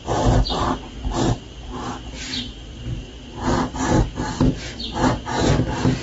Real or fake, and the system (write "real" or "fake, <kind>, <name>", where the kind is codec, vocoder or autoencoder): real